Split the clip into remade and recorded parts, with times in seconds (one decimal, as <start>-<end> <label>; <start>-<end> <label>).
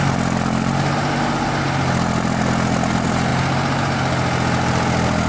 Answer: 0.0-5.3 recorded